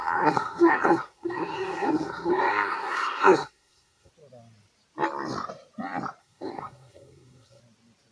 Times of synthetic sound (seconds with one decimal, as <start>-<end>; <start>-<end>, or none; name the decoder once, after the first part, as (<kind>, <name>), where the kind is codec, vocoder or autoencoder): 0.0-4.1 (codec, SNAC); 6.2-7.6